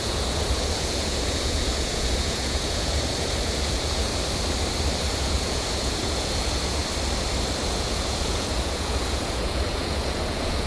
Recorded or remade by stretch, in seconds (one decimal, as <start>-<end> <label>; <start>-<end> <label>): 0.0-4.1 remade; 4.1-5.0 recorded; 5.0-6.8 remade; 6.8-7.6 recorded; 7.6-10.7 remade

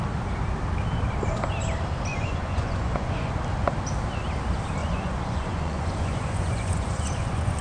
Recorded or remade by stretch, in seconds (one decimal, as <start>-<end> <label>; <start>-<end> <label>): 0.0-2.1 recorded; 2.1-3.4 remade; 3.4-4.8 recorded; 4.8-7.6 remade

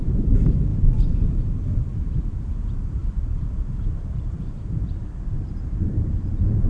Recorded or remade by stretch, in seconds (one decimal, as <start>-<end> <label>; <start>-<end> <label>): 0.0-0.7 remade; 0.7-2.2 recorded; 2.2-6.7 remade

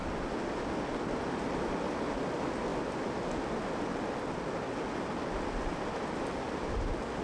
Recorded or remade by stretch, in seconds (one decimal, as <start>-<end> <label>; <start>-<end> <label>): 0.0-7.2 recorded

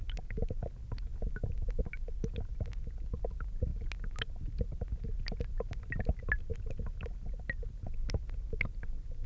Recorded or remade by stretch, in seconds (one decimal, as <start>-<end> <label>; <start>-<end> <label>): 0.0-9.3 recorded

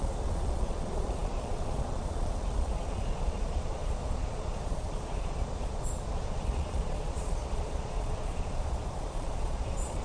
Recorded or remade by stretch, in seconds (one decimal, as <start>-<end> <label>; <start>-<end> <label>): 0.0-10.0 remade

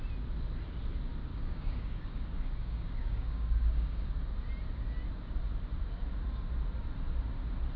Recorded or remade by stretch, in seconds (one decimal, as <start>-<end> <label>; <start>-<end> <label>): 0.0-1.3 recorded; 1.3-4.1 remade; 4.1-7.8 recorded

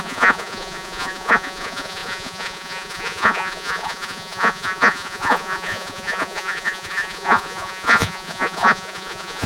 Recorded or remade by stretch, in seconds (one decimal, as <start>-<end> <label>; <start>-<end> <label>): 0.0-9.5 remade